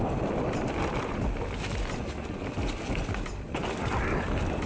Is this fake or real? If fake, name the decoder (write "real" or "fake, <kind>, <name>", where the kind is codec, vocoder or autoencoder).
real